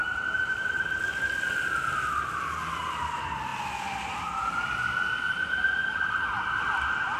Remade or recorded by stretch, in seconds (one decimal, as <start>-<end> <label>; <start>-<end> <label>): 0.0-1.0 remade; 1.0-7.2 recorded